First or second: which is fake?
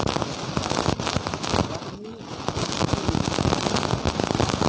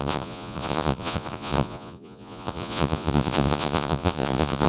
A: second